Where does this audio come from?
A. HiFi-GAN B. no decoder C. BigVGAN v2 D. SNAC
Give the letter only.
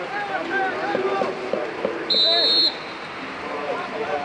B